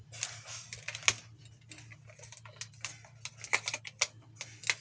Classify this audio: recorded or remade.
recorded